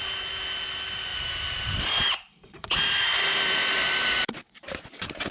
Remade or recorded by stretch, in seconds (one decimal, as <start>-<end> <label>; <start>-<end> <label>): 0.0-1.1 recorded; 1.1-4.3 remade; 4.3-5.3 recorded